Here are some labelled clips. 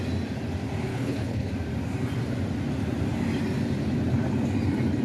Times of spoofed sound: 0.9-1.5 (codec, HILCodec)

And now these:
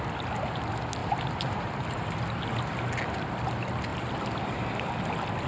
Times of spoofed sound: 1.0-2.3 (vocoder, BigVGAN v2)

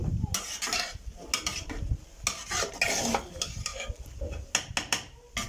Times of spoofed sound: none

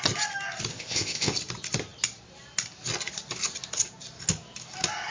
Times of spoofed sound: 0.7-1.3 (codec, ZipCodec)

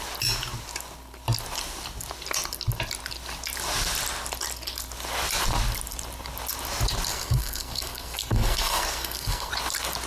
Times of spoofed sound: 7.1-9.5 (codec, SNAC)